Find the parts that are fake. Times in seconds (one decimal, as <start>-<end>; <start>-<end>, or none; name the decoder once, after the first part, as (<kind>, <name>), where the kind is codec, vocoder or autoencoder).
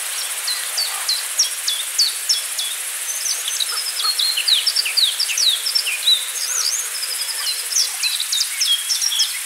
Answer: none